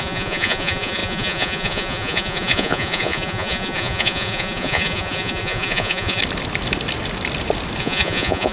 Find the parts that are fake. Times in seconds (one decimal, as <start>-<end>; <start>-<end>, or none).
0.0-6.2; 7.8-8.5